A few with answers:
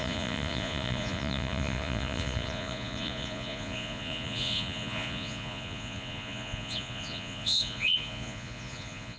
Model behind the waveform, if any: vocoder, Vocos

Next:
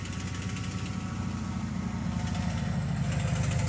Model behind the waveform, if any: none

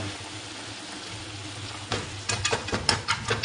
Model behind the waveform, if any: none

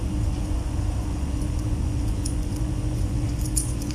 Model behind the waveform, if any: vocoder, Vocos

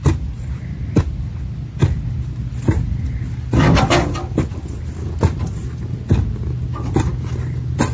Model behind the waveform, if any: none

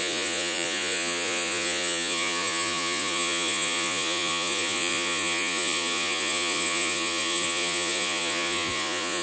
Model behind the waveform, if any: vocoder, Vocos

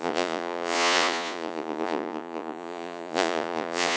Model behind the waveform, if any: vocoder, Vocos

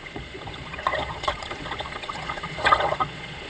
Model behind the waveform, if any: vocoder, Vocos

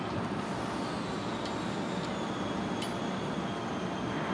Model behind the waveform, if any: none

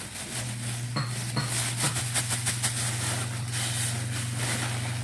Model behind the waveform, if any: none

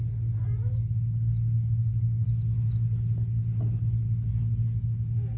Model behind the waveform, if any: none